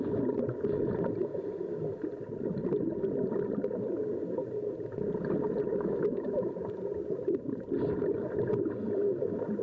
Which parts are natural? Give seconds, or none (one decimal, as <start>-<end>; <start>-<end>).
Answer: 0.0-5.7; 6.5-9.6